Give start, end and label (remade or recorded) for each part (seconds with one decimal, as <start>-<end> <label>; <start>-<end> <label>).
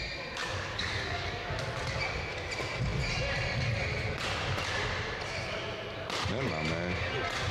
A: 0.0-0.4 recorded; 0.4-1.5 remade; 1.5-7.5 recorded